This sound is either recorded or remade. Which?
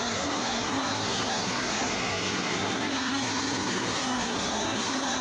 remade